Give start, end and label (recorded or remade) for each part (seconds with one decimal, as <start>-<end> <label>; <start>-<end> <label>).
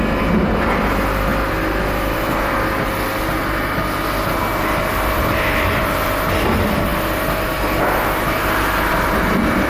0.0-9.7 recorded